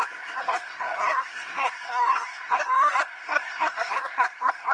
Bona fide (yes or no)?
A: no